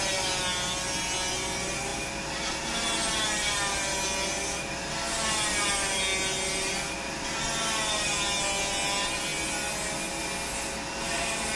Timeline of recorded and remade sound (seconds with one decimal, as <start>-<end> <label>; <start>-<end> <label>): 0.0-11.6 recorded